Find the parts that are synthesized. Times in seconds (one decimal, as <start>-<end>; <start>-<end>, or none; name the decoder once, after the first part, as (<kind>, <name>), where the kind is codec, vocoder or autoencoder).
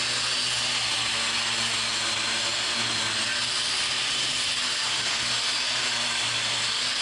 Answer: none